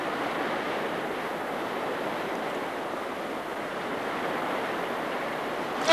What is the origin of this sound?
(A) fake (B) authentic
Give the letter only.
B